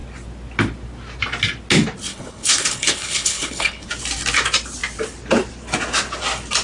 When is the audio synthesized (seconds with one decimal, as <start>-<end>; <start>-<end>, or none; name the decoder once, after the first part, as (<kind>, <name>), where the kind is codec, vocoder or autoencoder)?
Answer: 2.1-3.9 (codec, HILCodec)